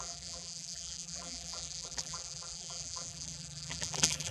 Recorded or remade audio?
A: remade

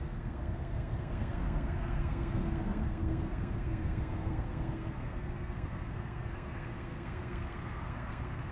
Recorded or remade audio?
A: remade